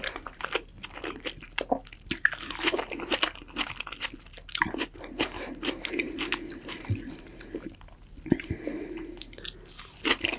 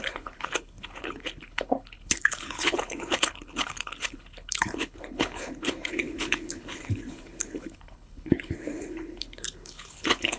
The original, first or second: first